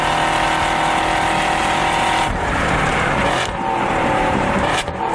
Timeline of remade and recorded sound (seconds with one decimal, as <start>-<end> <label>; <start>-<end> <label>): 0.0-1.8 recorded; 1.8-5.1 remade